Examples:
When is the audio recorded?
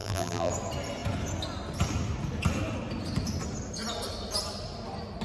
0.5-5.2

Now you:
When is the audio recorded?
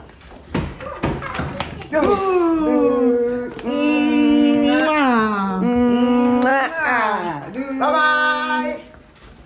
0.0-9.5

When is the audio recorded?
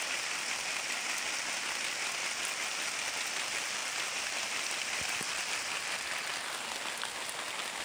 0.0-7.8